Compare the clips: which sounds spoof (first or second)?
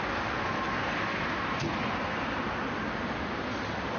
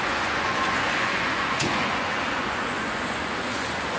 second